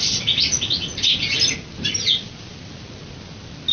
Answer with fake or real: real